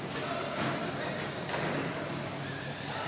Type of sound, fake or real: real